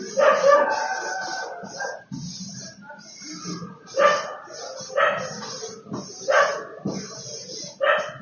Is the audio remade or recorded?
recorded